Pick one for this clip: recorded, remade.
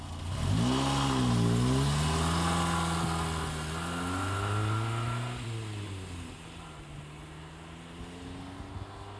recorded